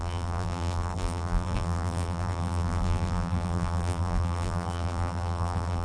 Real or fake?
fake